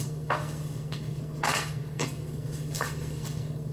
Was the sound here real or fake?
fake